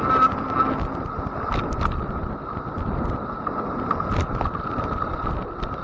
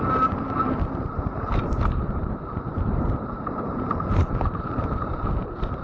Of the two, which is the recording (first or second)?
first